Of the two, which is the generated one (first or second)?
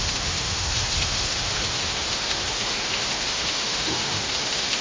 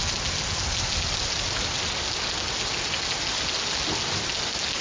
first